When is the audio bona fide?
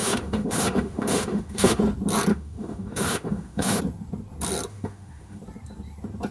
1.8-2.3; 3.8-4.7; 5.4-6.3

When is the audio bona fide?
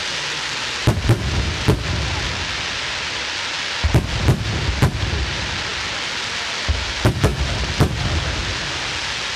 0.0-9.4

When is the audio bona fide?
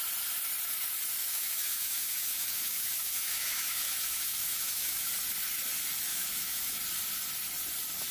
0.0-1.2; 5.1-6.1; 6.8-8.1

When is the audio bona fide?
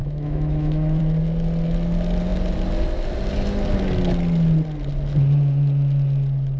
1.0-6.6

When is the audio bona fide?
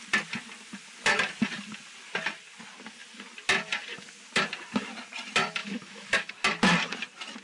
0.0-5.6; 6.3-7.4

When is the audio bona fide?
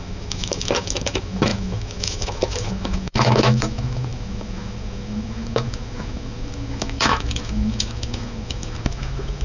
none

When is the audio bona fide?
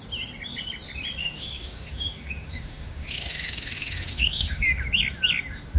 0.0-1.2; 4.7-5.8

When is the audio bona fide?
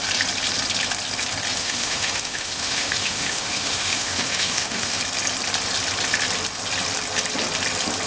0.0-1.6; 5.0-8.1